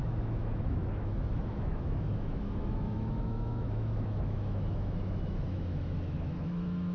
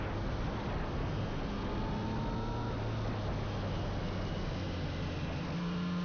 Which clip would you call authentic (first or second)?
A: second